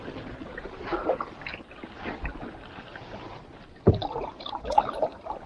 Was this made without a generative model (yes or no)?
yes